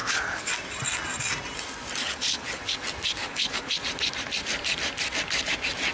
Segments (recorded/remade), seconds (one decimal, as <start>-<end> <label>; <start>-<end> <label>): 0.0-0.5 remade; 0.5-2.0 recorded; 2.0-2.6 remade; 2.6-3.2 recorded; 3.2-3.7 remade; 3.7-5.9 recorded